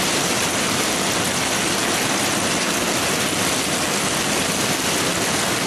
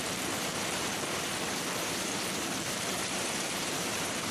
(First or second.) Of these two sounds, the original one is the first